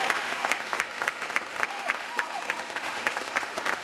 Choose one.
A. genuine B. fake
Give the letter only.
B